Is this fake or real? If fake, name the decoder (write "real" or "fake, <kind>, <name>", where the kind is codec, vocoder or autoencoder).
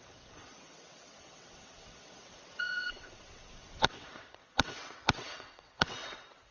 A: fake, vocoder, WaveNeXt